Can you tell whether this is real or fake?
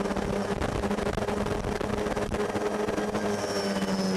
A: real